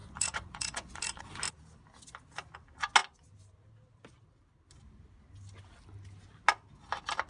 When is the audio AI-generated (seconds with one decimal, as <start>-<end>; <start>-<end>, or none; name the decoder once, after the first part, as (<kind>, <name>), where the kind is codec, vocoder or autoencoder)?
0.0-1.2 (vocoder, Vocos)